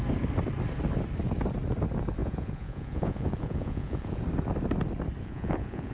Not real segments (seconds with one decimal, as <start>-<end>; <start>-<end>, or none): 2.2-4.2; 5.2-5.9

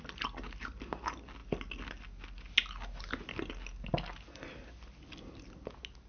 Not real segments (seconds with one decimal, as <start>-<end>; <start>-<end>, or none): none

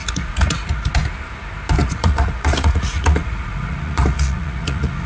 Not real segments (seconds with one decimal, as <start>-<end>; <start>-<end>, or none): 0.0-0.9; 1.8-5.1

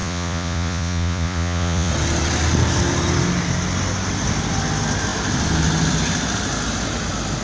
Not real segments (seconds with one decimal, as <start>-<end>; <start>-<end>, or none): 0.0-1.9

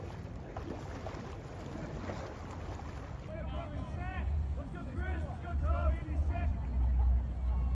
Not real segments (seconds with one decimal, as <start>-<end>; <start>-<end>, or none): 4.1-6.5

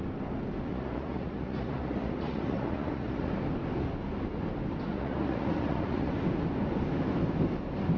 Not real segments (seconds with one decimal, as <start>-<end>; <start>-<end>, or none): 0.7-3.3; 4.9-6.1

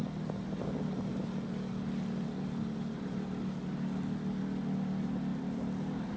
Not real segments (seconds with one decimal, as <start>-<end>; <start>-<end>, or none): none

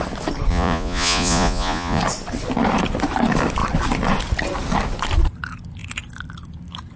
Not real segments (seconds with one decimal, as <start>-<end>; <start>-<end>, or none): 0.5-2.0